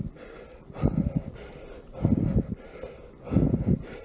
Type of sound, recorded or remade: recorded